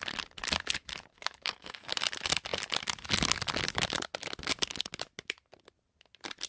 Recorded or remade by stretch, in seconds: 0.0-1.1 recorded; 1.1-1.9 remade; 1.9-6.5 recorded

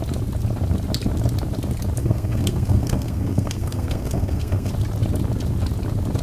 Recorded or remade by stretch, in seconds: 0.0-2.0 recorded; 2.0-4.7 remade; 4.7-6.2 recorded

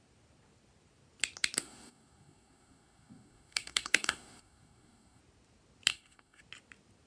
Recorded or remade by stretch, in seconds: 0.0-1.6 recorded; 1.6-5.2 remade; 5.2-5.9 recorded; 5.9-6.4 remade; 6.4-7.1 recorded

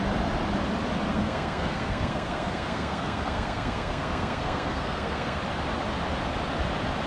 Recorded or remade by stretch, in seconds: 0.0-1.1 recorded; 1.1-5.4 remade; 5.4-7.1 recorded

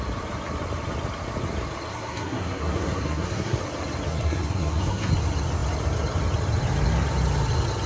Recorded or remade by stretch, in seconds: 0.0-1.9 recorded; 1.9-3.6 remade; 3.6-4.1 recorded; 4.1-5.1 remade; 5.1-7.9 recorded

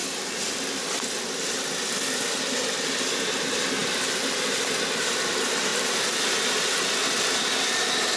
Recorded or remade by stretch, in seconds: 0.0-8.2 recorded